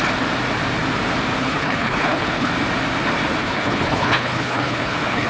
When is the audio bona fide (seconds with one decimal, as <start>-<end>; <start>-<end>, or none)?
0.0-1.4; 2.5-3.4